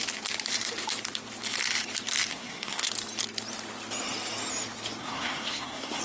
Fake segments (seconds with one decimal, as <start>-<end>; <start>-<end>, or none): 2.3-2.9; 5.0-6.0